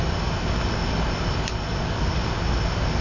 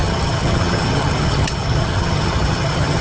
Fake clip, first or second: second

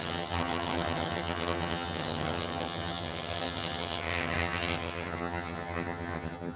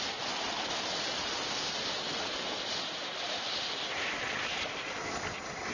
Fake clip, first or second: first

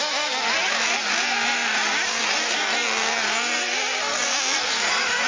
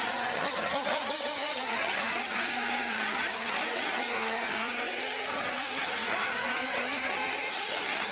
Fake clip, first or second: second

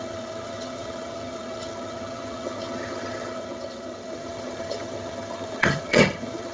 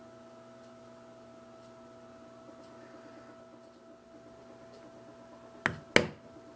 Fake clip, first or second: first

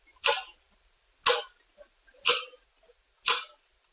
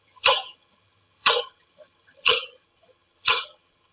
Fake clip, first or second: second